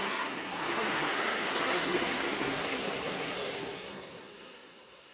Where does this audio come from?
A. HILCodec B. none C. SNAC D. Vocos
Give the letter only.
C